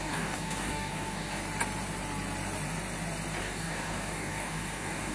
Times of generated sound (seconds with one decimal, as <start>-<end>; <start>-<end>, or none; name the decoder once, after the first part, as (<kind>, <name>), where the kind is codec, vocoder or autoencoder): 0.0-1.4 (codec, DAC); 3.4-5.1

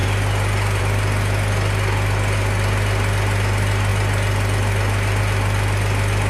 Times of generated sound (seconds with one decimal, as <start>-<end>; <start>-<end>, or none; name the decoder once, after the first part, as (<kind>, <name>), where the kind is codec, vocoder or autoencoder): none

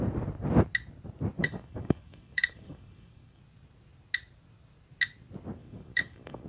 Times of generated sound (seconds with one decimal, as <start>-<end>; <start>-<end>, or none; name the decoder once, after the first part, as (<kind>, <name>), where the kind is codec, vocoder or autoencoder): 1.4-3.4 (codec, DAC); 5.6-6.5

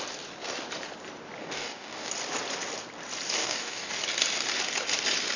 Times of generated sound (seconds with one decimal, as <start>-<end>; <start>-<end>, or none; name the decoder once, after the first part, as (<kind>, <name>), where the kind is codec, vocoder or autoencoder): 1.4-2.1 (codec, DAC); 3.4-3.9

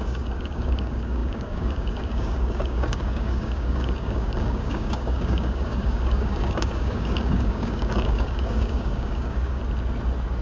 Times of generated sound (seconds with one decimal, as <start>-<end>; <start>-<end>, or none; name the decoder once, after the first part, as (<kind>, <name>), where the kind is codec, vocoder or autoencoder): 0.0-9.6 (codec, DAC)

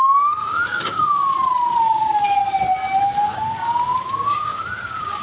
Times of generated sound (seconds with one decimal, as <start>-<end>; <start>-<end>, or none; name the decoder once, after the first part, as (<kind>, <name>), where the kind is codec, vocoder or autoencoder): 0.0-1.2 (codec, DAC); 1.8-2.4; 3.0-5.2